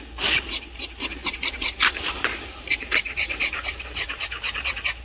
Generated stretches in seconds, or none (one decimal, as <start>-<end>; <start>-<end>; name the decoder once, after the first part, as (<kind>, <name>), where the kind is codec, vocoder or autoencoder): 1.2-4.2 (vocoder, BigVGAN v2)